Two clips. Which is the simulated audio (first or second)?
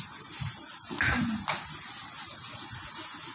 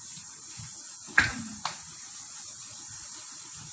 second